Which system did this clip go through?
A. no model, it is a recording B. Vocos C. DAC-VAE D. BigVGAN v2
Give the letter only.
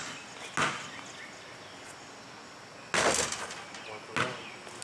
A